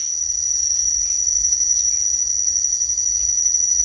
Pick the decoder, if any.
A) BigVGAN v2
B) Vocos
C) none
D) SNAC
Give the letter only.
C